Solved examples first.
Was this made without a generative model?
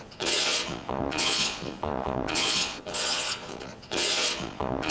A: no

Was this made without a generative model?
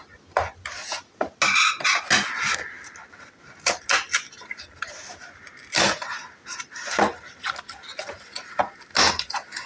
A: yes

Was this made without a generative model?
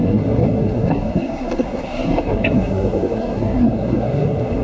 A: no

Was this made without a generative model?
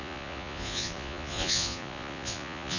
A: no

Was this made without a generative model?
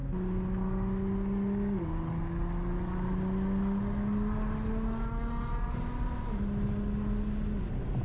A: yes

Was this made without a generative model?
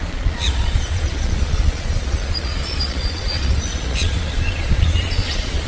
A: no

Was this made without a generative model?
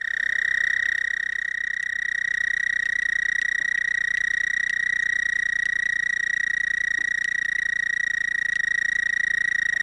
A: yes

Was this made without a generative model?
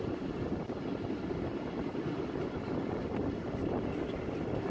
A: yes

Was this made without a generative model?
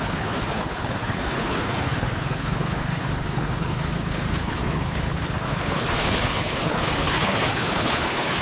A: no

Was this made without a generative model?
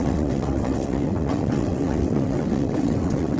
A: no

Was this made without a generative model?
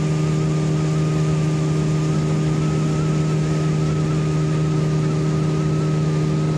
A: yes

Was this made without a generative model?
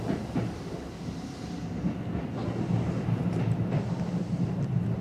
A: yes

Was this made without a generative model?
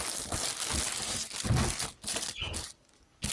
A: yes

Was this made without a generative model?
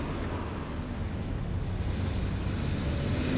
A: yes